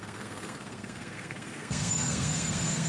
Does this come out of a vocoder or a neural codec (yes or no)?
yes